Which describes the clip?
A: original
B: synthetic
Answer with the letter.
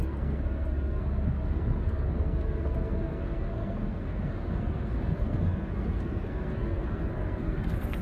B